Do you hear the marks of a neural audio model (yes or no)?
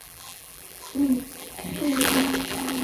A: yes